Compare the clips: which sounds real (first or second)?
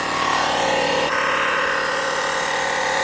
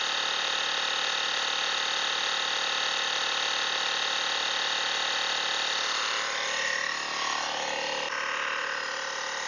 second